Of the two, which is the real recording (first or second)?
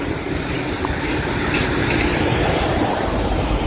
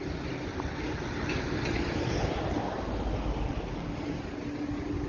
second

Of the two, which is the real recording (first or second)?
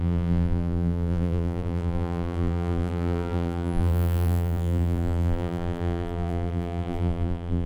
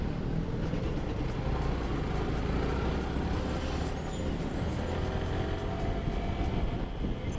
second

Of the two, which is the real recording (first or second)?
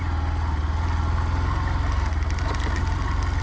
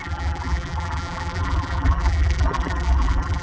first